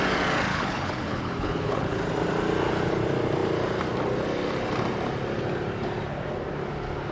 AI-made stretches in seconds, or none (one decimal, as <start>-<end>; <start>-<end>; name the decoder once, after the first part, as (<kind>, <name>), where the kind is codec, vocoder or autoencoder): 0.5-2.0 (codec, HILCodec)